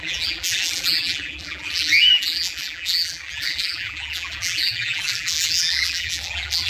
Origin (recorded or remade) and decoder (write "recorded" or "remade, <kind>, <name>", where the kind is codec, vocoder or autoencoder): remade, vocoder, BigVGAN v2